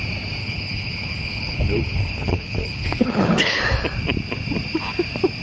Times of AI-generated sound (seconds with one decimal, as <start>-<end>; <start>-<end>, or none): 0.4-3.6